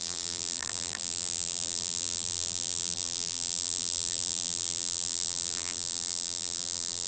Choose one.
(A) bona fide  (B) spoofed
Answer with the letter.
B